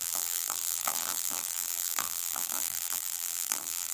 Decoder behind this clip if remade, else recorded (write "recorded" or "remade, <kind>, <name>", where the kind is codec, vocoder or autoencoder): remade, vocoder, BigVGAN v2